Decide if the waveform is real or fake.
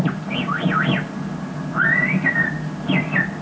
real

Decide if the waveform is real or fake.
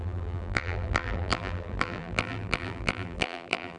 fake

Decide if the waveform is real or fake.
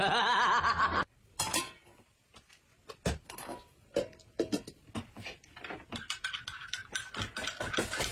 real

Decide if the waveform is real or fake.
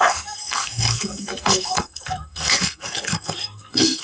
fake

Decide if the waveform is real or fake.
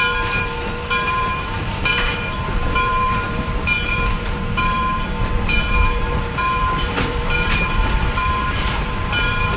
fake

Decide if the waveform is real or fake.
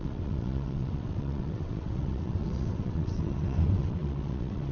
fake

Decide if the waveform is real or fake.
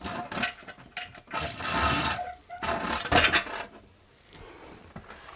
real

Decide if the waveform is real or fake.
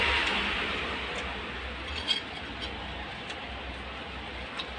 real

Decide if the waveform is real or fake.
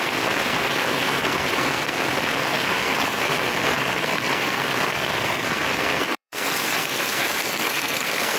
fake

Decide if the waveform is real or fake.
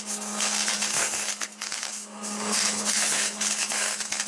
fake